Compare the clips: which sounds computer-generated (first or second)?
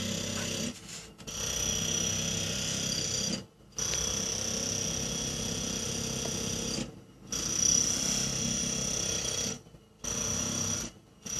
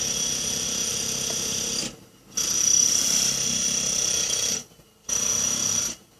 second